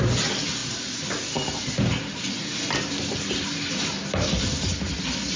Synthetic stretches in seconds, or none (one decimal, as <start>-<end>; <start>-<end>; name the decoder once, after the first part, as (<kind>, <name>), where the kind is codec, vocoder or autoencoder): none